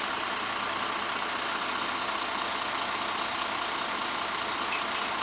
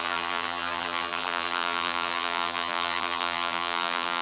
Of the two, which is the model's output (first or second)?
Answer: second